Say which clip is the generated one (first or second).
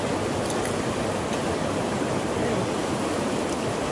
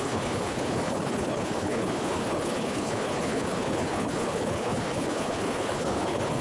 second